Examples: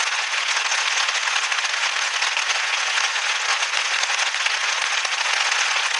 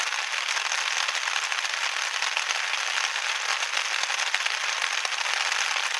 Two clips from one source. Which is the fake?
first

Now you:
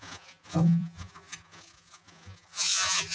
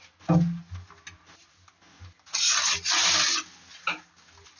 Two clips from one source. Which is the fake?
first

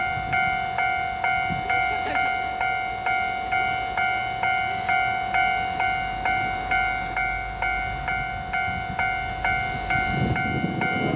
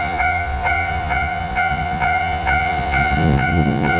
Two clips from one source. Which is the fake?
second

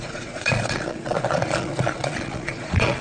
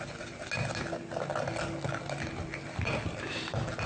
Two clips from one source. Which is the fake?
first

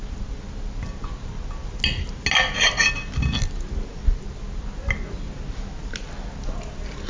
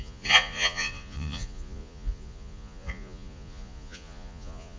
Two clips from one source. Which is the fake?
second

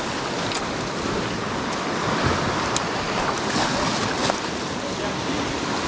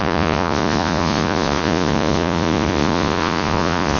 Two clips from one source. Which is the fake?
second